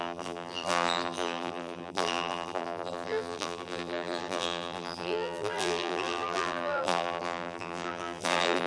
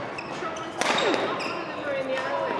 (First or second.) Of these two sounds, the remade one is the first